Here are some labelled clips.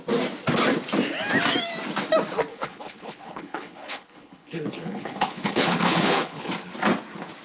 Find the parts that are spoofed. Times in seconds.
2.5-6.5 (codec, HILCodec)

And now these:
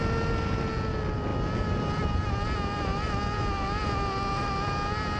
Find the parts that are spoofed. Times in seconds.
none

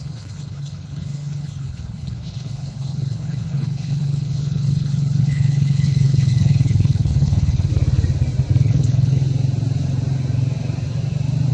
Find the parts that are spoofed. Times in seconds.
0.0-7.7 (codec, HILCodec); 8.6-9.2

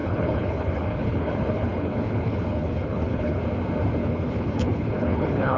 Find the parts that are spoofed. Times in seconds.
0.0-3.4 (codec, HILCodec); 4.0-5.6

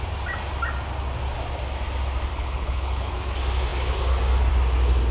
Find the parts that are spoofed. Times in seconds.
2.3-3.1 (codec, HILCodec)

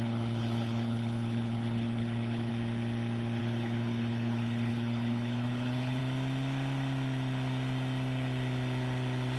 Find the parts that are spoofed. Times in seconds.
0.0-2.5 (codec, HILCodec); 3.4-6.0